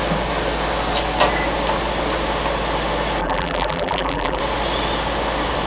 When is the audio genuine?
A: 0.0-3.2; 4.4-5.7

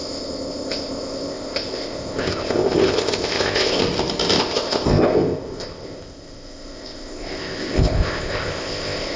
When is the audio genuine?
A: 3.8-4.4

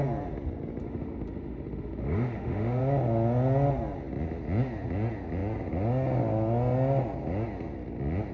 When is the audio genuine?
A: 0.0-0.8; 2.8-8.3